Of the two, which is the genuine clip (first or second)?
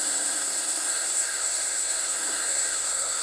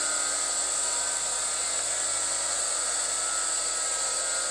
second